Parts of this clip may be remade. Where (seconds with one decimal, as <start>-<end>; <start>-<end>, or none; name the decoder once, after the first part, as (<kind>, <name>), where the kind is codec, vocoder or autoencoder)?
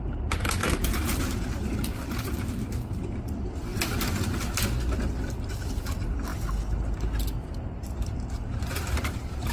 0.0-3.7 (vocoder, BigVGAN v2); 5.1-6.3; 7.8-9.5